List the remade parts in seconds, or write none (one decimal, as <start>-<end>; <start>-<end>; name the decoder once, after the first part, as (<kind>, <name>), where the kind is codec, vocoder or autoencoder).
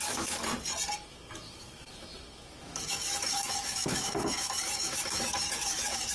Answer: 0.0-0.4 (autoencoder, DAC-VAE); 1.1-6.1